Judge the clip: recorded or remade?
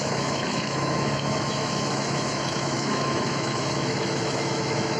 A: remade